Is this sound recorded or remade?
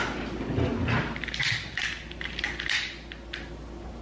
recorded